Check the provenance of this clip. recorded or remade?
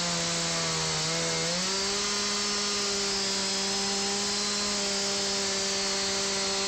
recorded